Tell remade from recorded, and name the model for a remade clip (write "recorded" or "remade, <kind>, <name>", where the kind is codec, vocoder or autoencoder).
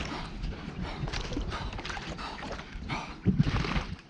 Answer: remade, vocoder, BigVGAN v2